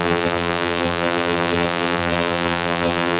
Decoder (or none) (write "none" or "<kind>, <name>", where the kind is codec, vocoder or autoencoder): vocoder, BigVGAN v2